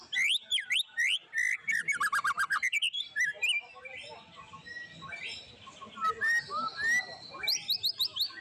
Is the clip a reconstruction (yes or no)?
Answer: no